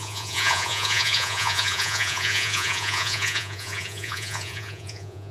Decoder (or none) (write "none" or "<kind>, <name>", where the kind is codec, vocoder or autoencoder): vocoder, Vocos